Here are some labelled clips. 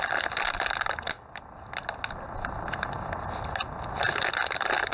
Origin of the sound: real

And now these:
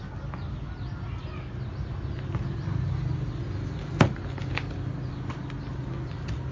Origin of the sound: real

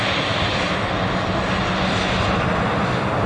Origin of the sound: real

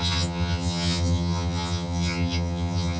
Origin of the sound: fake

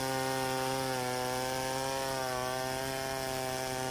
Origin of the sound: real